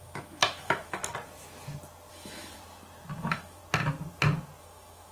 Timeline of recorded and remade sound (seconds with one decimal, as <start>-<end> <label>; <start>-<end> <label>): 0.0-1.0 remade; 1.0-2.1 recorded; 2.1-2.6 remade; 2.6-3.2 recorded; 3.2-3.6 remade; 3.6-4.6 recorded; 4.6-5.1 remade